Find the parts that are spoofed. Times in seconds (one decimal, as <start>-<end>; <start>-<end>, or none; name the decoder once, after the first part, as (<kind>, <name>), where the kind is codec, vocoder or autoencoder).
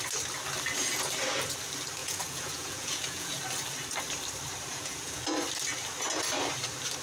2.0-3.4 (vocoder, Vocos); 4.7-5.2